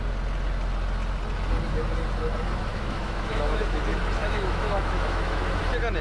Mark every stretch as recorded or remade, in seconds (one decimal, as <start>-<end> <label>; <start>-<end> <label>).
0.0-2.7 recorded; 2.7-3.8 remade; 3.8-4.2 recorded; 4.2-5.6 remade; 5.6-6.0 recorded